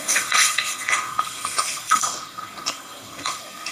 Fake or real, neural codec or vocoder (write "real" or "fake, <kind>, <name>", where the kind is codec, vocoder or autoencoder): fake, codec, SNAC